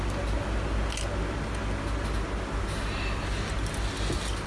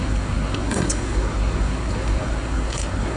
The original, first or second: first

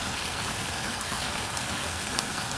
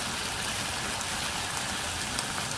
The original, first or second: second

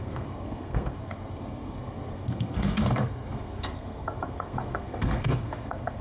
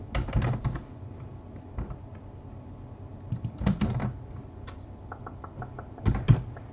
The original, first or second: second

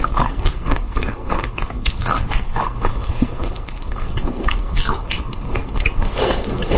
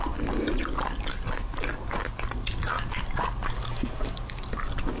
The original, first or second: second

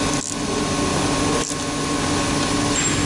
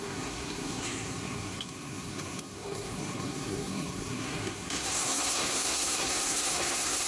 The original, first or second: first